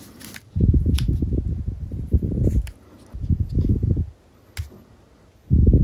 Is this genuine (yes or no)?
yes